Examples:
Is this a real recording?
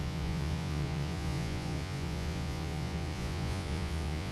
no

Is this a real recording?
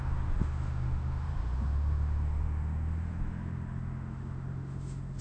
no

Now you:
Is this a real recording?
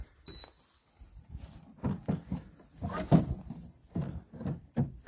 yes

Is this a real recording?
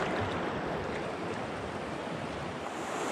yes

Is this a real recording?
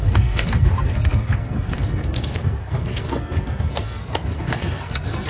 no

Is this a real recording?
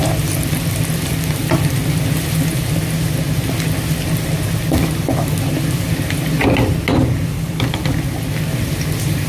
yes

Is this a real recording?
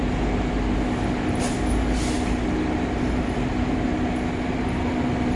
yes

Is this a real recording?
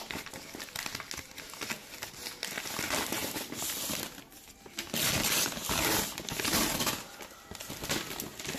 yes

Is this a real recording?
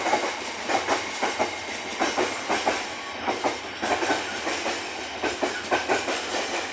yes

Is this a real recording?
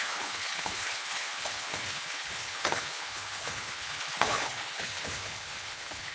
no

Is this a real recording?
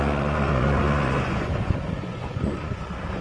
no